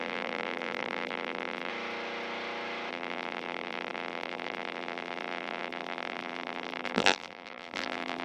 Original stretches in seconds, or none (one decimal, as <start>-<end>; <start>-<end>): 1.7-2.9